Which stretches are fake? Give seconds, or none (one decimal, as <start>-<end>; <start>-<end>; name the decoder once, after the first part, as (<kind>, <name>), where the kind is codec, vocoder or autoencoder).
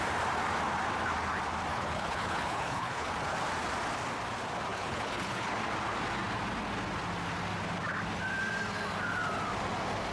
1.7-3.1 (codec, HILCodec); 4.7-5.6